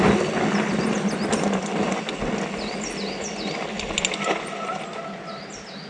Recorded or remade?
recorded